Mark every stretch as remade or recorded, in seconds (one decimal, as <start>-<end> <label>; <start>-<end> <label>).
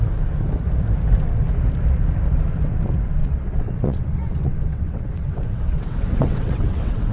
0.0-3.2 recorded; 3.2-7.1 remade